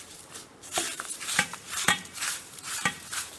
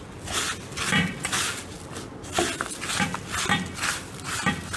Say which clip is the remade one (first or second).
first